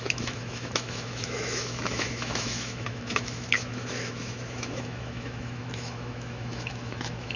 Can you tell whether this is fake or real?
fake